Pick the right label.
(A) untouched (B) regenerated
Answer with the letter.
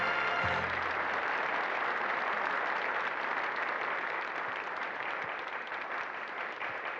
A